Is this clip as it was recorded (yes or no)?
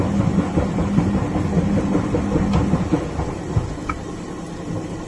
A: yes